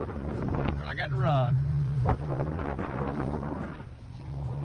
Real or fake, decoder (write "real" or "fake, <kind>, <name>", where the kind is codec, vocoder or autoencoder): fake, vocoder, Vocos